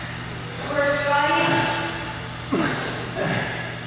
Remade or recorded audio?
recorded